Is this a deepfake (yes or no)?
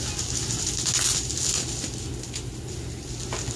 no